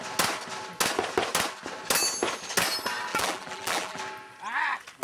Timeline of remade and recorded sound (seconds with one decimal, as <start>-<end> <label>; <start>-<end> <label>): 0.0-3.1 recorded; 3.1-4.0 remade; 4.0-5.0 recorded

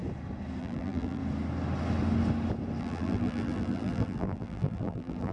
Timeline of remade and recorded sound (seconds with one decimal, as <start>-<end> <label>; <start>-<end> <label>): 0.0-0.6 recorded; 0.6-1.2 remade; 1.2-2.8 recorded; 2.8-5.3 remade

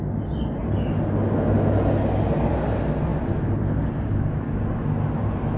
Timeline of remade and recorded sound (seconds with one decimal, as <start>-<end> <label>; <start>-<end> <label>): 0.0-5.6 recorded

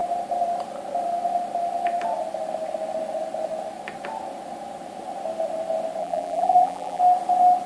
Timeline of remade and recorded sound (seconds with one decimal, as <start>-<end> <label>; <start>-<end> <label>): 0.0-6.0 recorded; 6.0-7.0 remade; 7.0-7.7 recorded